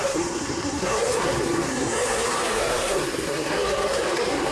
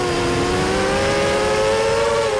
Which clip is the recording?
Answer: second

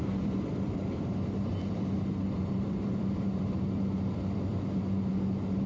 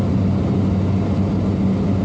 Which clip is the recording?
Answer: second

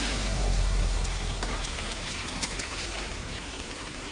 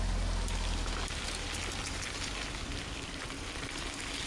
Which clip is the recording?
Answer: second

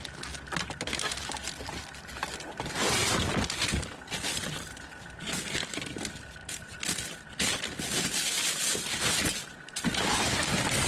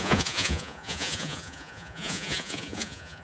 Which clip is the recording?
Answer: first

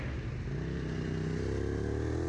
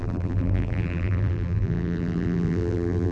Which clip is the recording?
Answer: first